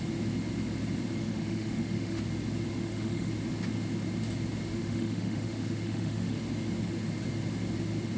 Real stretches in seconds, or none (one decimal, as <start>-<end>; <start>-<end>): 0.0-1.2; 2.2-2.7; 3.3-4.7; 6.4-8.2